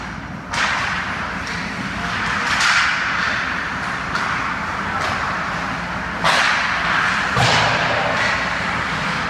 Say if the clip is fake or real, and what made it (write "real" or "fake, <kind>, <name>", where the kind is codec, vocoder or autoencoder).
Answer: real